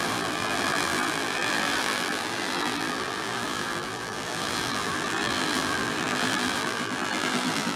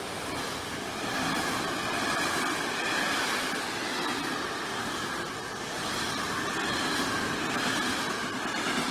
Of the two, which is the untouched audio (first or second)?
second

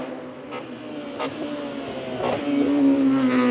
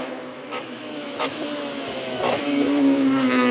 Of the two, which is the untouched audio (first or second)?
first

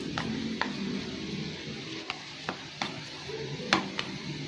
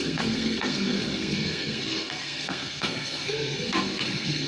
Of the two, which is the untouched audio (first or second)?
first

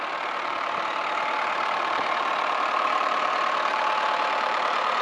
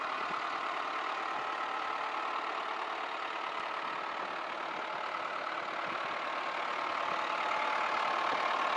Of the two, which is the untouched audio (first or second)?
second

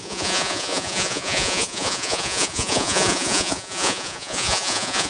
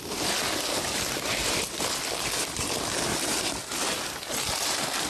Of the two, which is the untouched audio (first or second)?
second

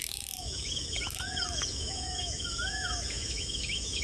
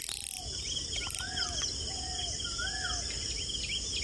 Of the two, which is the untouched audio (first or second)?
second